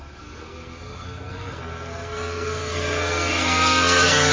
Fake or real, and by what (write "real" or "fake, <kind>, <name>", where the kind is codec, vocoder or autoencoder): fake, codec, SNAC